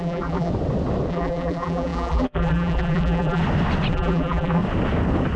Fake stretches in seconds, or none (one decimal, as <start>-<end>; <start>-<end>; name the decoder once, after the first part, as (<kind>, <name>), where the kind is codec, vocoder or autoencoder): 0.0-0.5 (vocoder, BigVGAN v2); 1.1-3.4; 3.9-4.6